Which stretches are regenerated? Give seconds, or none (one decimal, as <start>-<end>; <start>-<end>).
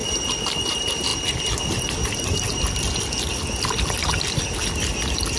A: none